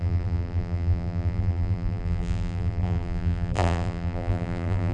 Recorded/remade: remade